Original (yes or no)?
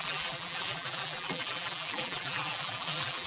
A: no